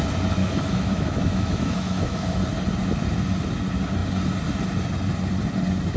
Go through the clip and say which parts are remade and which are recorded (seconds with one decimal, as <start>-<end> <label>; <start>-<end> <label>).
0.0-0.4 recorded; 0.4-2.4 remade; 2.4-6.0 recorded